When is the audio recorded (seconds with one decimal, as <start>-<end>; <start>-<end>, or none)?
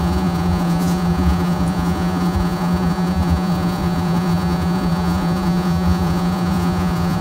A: none